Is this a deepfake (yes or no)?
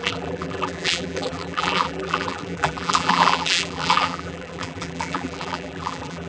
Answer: yes